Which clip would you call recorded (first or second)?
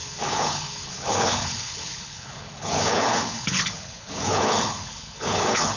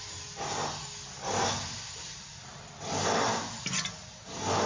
second